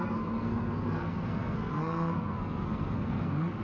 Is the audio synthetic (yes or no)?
yes